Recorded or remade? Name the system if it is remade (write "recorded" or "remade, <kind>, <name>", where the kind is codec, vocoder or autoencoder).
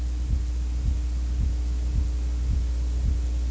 recorded